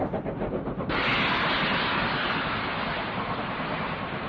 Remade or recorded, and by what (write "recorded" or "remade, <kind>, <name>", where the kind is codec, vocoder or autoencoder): recorded